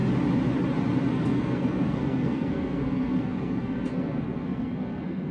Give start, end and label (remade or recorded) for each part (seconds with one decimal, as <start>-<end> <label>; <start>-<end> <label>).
0.0-1.1 recorded; 1.1-5.3 remade

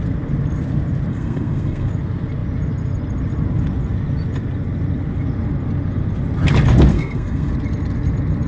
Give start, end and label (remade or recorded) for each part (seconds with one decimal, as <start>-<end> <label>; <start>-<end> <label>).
0.0-1.1 recorded; 1.1-1.9 remade; 1.9-6.9 recorded; 6.9-7.5 remade; 7.5-8.5 recorded

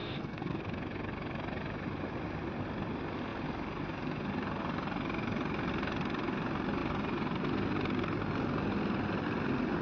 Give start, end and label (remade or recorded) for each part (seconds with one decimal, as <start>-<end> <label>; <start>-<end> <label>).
0.0-0.6 remade; 0.6-9.8 recorded